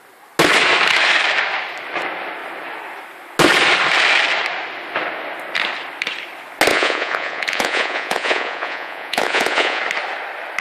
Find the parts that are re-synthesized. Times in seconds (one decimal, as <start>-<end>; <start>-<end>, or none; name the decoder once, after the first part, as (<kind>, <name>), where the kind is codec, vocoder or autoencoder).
6.7-9.8 (vocoder, Vocos)